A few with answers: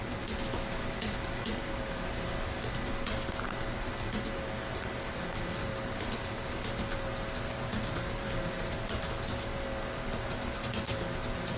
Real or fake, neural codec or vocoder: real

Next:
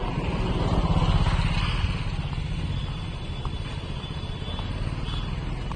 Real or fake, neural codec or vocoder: real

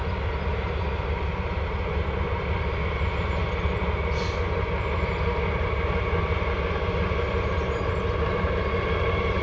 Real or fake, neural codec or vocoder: real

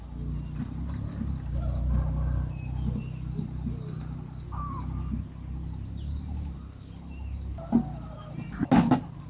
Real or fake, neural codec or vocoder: real